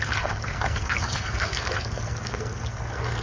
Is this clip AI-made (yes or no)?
yes